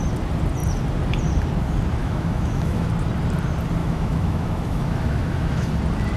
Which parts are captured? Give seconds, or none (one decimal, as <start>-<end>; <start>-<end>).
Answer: 0.0-2.0; 2.9-3.8; 5.7-6.2